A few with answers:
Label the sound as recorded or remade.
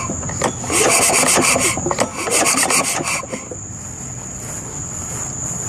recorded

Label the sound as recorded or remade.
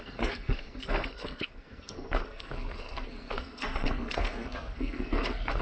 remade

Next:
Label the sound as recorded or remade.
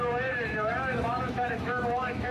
remade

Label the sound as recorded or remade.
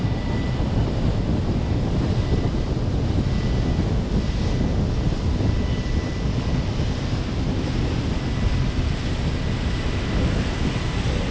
recorded